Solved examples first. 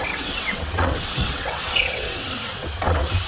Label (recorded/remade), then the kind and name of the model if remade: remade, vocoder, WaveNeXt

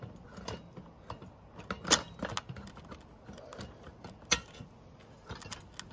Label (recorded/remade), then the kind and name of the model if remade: recorded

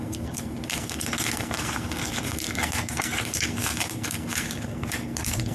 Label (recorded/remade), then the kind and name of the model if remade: remade, codec, SNAC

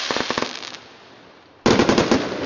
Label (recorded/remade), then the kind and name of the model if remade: recorded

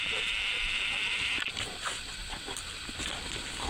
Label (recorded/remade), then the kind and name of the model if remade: recorded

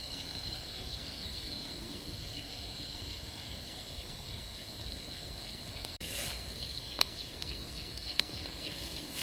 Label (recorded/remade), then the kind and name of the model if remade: remade, codec, SNAC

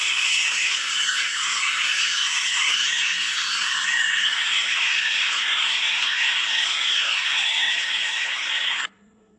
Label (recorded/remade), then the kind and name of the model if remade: remade, codec, SNAC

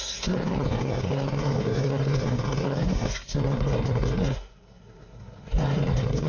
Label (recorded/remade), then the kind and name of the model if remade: remade, codec, SNAC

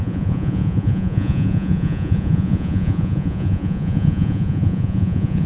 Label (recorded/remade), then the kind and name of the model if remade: remade, vocoder, Vocos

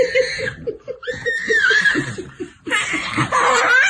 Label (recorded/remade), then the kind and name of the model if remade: remade, vocoder, BigVGAN v2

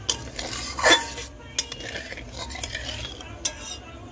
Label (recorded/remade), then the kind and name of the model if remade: recorded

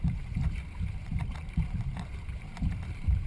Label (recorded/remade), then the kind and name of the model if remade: remade, vocoder, BigVGAN v2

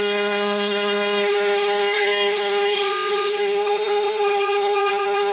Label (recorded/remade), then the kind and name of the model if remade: remade, codec, SNAC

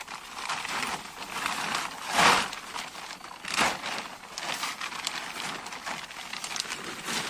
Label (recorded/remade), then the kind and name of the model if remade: recorded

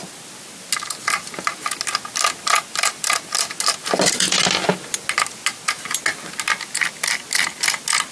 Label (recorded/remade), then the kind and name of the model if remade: recorded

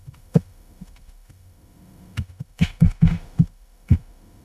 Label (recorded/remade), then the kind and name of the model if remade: remade, autoencoder, DAC-VAE